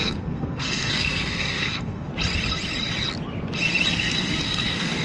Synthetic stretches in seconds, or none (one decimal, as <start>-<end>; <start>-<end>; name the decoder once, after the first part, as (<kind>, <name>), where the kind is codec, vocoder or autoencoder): 0.0-2.1 (codec, SNAC); 3.9-5.0